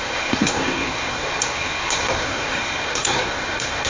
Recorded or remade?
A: remade